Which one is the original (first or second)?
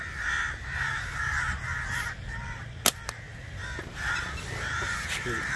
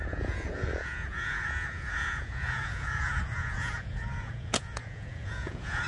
first